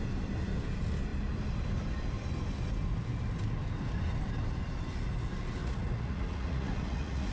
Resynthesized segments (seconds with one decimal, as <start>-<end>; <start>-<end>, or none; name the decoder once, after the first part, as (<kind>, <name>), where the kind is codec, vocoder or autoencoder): 5.6-7.3 (vocoder, Vocos)